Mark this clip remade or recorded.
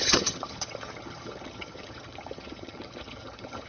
remade